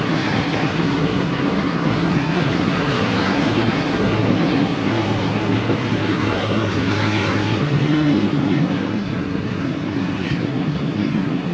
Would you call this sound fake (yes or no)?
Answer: yes